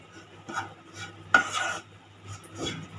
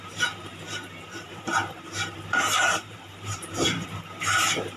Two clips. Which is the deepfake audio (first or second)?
second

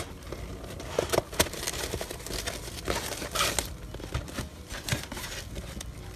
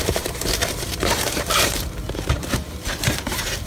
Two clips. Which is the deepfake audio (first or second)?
second